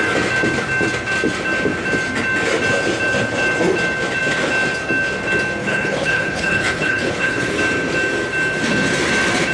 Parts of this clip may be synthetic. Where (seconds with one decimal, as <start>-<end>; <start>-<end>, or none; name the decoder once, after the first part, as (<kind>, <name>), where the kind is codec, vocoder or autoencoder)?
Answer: 5.6-7.6 (codec, HILCodec)